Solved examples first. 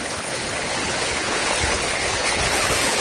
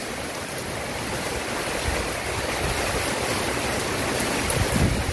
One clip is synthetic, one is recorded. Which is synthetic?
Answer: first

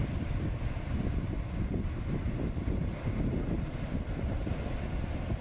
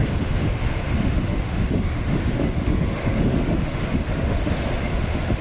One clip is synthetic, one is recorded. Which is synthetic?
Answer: second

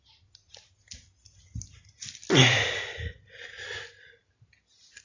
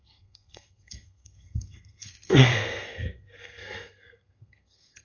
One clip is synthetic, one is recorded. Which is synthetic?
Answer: second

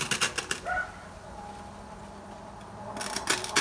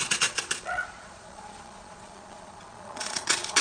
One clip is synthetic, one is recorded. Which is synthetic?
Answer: second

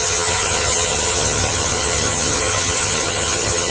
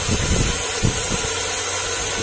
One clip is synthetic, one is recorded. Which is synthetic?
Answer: first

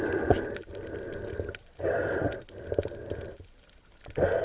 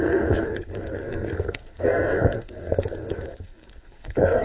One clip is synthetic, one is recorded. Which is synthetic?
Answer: second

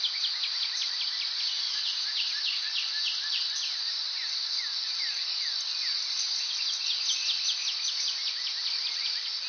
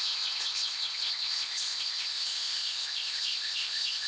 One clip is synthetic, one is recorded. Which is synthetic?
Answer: second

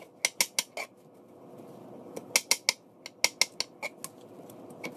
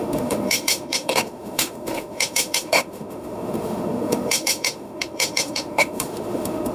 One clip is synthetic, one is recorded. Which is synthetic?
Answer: second